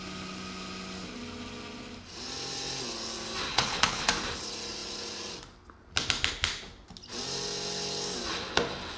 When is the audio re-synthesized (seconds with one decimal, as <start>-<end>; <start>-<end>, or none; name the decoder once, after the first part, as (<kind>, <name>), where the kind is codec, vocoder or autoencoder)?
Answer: 3.5-4.1 (codec, HILCodec)